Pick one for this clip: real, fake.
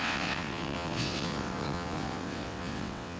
fake